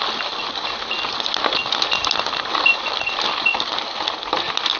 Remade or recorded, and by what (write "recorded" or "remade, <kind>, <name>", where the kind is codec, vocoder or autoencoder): recorded